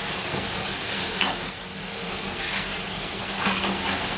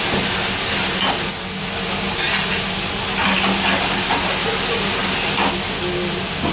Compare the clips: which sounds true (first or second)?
second